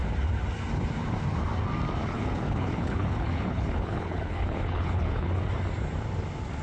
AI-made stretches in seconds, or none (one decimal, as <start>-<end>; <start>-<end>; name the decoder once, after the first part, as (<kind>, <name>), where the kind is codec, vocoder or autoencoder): 2.0-5.4 (codec, HILCodec)